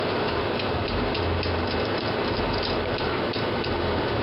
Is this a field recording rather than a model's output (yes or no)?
yes